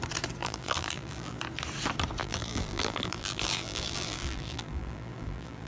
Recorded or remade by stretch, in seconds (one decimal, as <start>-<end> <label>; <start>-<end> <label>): 0.0-0.4 recorded; 0.4-1.4 remade; 1.4-2.2 recorded; 2.2-5.7 remade